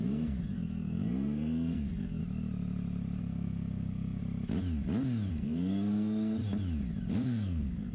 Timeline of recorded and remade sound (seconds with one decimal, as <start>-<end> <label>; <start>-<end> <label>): 0.0-2.2 remade; 2.2-3.2 recorded; 3.2-4.2 remade; 4.2-5.3 recorded; 5.3-6.4 remade; 6.4-7.1 recorded; 7.1-7.9 remade